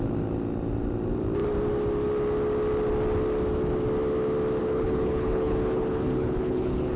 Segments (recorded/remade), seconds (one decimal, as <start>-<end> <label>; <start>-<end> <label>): 0.0-4.6 recorded; 4.6-7.0 remade